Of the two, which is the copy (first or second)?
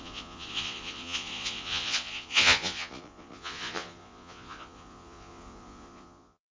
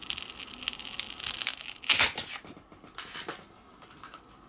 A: first